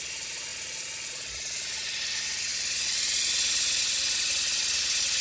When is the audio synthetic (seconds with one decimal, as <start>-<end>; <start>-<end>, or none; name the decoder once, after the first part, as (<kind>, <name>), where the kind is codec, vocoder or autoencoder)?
none